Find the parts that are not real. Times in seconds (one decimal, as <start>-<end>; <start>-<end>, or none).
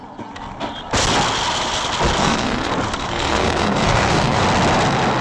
2.2-2.7; 3.1-4.4